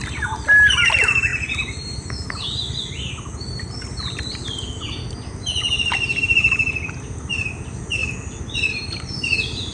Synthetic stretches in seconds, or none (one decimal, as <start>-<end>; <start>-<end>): none